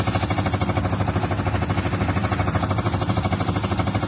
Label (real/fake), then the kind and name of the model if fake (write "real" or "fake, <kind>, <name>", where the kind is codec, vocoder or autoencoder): real